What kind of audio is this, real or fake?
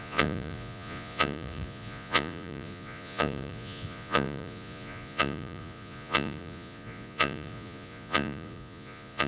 fake